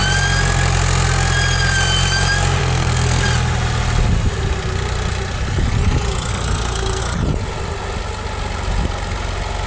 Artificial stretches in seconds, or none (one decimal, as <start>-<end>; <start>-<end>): 2.6-3.2; 6.3-7.0